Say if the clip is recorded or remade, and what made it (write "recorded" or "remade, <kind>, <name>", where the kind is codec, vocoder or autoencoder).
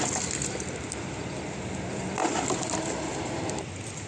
recorded